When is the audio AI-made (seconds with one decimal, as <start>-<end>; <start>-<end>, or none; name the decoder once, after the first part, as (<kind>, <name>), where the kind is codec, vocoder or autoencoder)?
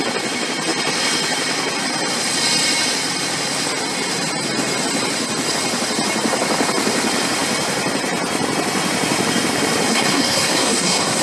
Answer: 9.9-11.2 (codec, SNAC)